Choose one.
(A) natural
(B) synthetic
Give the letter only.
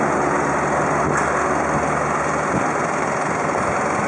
A